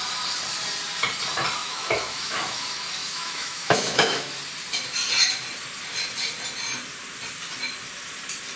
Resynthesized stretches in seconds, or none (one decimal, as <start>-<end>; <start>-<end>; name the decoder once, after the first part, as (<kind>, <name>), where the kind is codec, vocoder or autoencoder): 1.6-2.6 (autoencoder, DAC-VAE); 3.0-4.4